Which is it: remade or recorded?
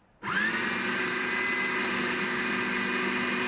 recorded